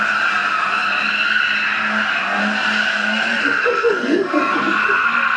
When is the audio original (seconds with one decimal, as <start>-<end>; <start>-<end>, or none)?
0.0-2.9